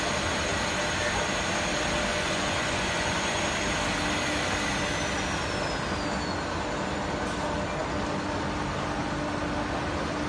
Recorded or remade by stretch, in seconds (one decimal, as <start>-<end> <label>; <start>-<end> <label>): 0.0-2.1 recorded; 2.1-3.4 remade; 3.4-10.3 recorded

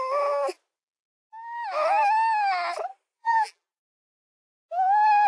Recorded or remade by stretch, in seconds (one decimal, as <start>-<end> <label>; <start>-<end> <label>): 0.0-3.2 recorded; 3.2-4.2 remade; 4.2-5.3 recorded

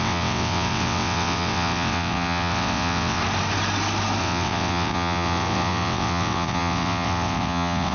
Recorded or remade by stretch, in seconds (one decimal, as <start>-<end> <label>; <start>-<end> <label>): 0.0-3.2 remade; 3.2-4.2 recorded; 4.2-7.9 remade

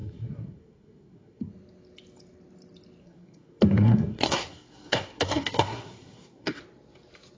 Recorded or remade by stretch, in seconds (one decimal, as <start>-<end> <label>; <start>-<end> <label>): 0.0-1.5 remade; 1.5-3.0 recorded; 3.0-6.6 remade; 6.6-7.4 recorded

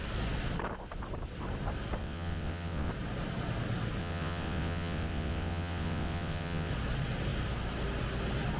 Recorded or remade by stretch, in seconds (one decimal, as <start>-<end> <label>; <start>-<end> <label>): 0.0-2.0 recorded; 2.0-2.9 remade; 2.9-4.0 recorded; 4.0-6.7 remade; 6.7-8.6 recorded

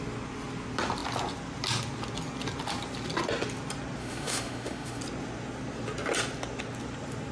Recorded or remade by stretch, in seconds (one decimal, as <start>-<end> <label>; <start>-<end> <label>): 0.0-4.0 recorded; 4.0-5.0 remade; 5.0-7.3 recorded

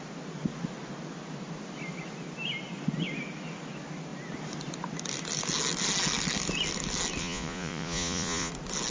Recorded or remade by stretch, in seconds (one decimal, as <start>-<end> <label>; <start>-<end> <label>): 0.0-7.2 recorded; 7.2-8.5 remade; 8.5-8.9 recorded

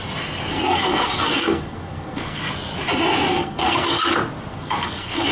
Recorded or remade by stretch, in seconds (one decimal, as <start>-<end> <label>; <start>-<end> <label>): 0.0-0.5 recorded; 0.5-2.4 remade; 2.4-3.3 recorded; 3.3-4.1 remade; 4.1-4.5 recorded; 4.5-5.3 remade